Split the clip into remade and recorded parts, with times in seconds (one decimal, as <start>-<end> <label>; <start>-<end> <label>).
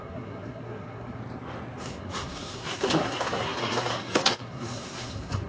0.0-1.2 remade; 1.2-1.8 recorded; 1.8-5.5 remade